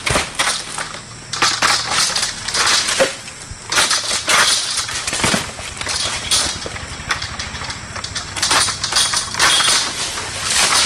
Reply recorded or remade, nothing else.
recorded